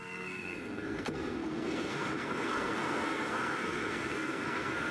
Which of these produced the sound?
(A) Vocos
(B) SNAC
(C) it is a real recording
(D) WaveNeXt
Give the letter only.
B